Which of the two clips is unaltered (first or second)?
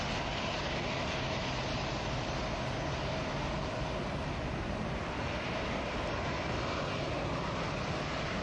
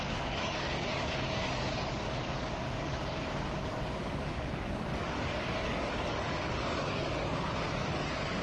first